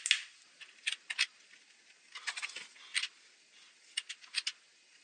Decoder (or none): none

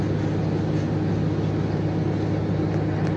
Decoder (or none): none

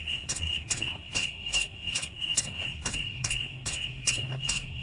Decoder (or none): codec, SNAC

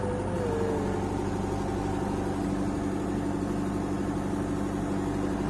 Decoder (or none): none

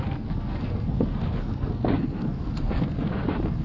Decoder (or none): codec, SNAC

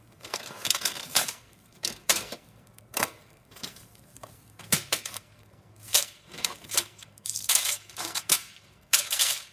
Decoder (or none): codec, SNAC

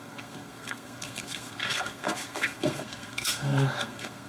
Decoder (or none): codec, SNAC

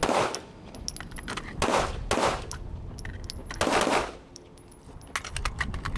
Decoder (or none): none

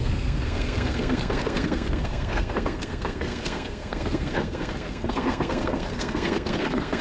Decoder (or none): codec, SNAC